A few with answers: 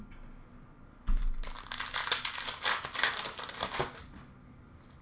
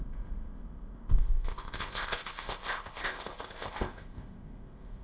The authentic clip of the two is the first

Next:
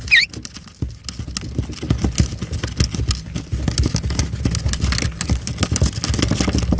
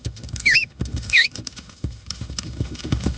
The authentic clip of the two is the first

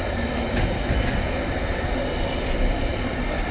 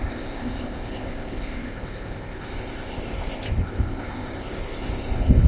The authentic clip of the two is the first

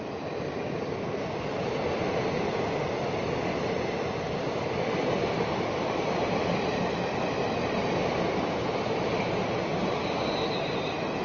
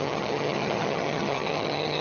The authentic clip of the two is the first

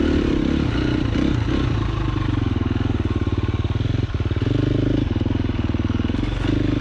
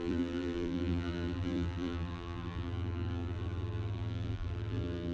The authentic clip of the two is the first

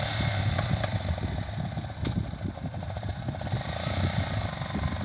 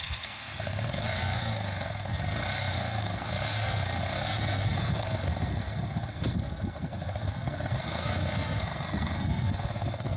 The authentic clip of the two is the first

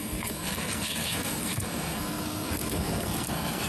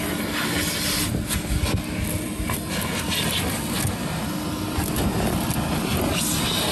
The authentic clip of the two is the second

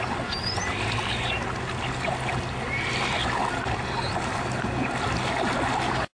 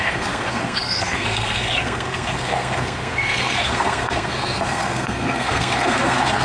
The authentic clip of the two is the first